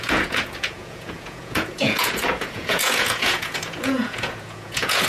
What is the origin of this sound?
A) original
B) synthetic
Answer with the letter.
B